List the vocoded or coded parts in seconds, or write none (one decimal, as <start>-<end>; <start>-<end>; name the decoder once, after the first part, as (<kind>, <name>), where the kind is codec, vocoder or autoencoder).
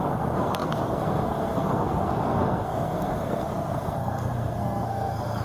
0.0-5.4 (codec, SNAC)